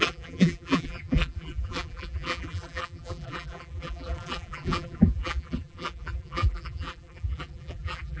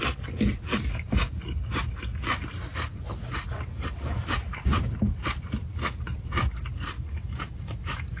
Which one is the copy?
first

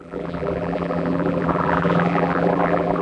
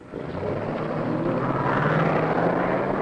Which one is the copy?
first